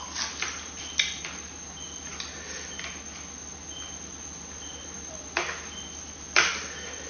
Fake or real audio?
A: real